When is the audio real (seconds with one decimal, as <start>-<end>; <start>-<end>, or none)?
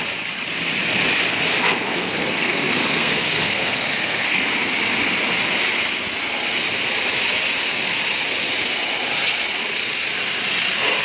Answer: 0.0-1.5; 4.4-11.0